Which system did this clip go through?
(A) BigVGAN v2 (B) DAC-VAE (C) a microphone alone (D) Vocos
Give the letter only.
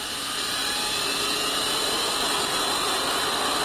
C